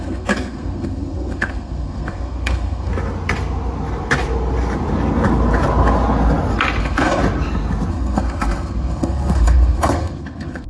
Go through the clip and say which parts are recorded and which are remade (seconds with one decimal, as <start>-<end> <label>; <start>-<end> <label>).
0.0-2.9 remade; 2.9-6.8 recorded; 6.8-7.2 remade; 7.2-7.9 recorded; 7.9-10.7 remade

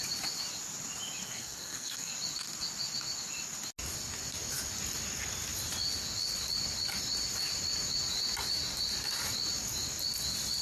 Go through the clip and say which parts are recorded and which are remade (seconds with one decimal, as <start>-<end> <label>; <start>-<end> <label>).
0.0-1.2 recorded; 1.2-2.1 remade; 2.1-10.6 recorded

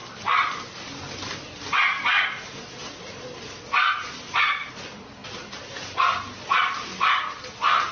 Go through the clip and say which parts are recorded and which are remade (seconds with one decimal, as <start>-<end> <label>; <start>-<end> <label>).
0.0-7.9 recorded

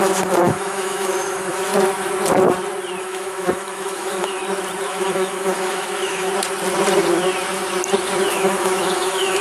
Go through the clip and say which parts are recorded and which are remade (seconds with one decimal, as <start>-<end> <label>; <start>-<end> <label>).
0.0-1.7 remade; 1.7-3.0 recorded; 3.0-4.4 remade; 4.4-4.9 recorded; 4.9-6.3 remade; 6.3-8.3 recorded; 8.3-9.4 remade

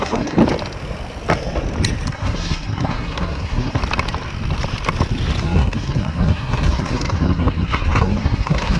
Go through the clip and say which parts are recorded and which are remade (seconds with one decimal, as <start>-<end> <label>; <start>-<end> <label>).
0.0-0.4 remade; 0.4-2.1 recorded; 2.1-3.8 remade; 3.8-5.4 recorded; 5.4-8.8 remade

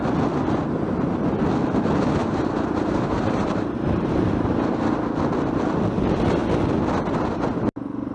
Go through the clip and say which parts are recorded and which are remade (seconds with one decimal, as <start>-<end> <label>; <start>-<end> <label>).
0.0-2.2 recorded; 2.2-4.7 remade; 4.7-8.1 recorded

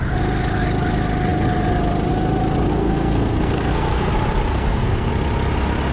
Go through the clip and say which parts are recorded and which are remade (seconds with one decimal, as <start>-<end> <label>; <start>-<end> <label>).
0.0-2.7 recorded; 2.7-4.1 remade; 4.1-4.5 recorded; 4.5-5.1 remade; 5.1-5.9 recorded

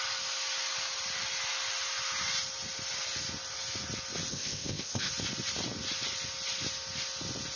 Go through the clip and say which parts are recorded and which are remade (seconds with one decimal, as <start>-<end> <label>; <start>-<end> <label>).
0.0-4.3 recorded; 4.3-5.1 remade; 5.1-7.6 recorded